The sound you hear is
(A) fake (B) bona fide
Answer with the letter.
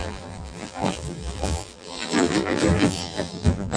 A